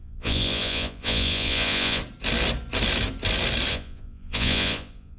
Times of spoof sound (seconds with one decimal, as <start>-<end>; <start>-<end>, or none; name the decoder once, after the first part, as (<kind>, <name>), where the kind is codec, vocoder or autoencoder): 0.0-2.0 (vocoder, Vocos); 3.7-5.2